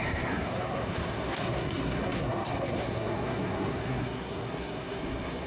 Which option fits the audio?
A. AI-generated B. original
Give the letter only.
A